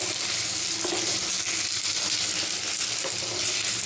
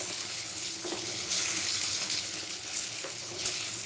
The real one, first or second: first